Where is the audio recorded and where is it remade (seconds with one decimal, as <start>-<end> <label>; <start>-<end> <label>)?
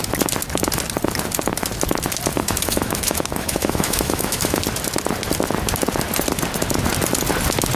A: 0.0-2.3 recorded; 2.3-4.6 remade; 4.6-7.8 recorded